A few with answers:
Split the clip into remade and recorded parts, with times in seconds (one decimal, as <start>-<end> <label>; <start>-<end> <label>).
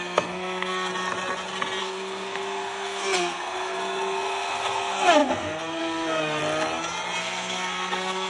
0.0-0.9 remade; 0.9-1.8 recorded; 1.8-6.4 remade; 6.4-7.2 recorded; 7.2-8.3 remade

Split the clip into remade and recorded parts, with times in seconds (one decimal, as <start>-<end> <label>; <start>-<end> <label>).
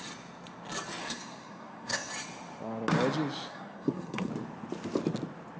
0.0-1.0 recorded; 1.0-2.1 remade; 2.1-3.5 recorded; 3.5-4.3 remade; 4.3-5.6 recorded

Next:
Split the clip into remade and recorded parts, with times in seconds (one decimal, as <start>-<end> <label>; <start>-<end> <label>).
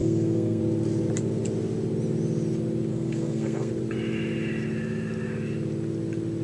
0.0-0.6 remade; 0.6-2.9 recorded; 2.9-3.7 remade; 3.7-6.4 recorded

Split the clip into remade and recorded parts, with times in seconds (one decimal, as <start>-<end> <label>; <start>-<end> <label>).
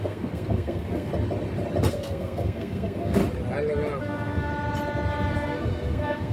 0.0-1.1 remade; 1.1-1.9 recorded; 1.9-3.2 remade; 3.2-4.0 recorded; 4.0-4.5 remade; 4.5-5.3 recorded; 5.3-6.3 remade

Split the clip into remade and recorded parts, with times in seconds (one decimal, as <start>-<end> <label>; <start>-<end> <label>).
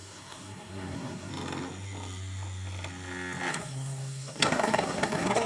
0.0-1.3 remade; 1.3-3.5 recorded; 3.5-5.5 remade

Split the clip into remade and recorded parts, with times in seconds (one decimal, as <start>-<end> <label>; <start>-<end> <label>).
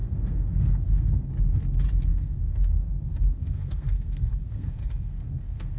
0.0-1.3 remade; 1.3-2.1 recorded; 2.1-5.8 remade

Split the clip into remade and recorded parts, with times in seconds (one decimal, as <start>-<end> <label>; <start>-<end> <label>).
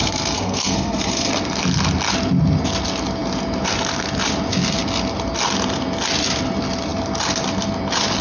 0.0-1.3 remade; 1.3-8.2 recorded